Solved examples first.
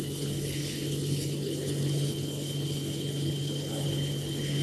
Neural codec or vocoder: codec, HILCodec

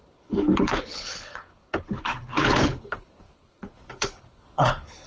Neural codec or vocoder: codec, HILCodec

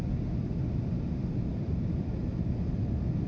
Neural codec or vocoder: none